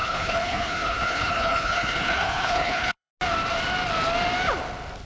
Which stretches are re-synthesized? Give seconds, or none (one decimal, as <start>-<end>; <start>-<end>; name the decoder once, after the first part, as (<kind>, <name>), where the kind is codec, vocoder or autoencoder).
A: 0.0-3.1 (codec, HILCodec)